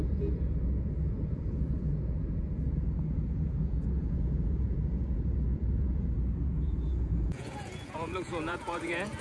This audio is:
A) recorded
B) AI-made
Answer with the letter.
B